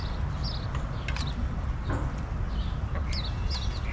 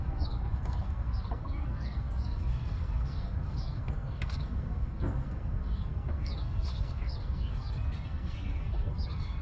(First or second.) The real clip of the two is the first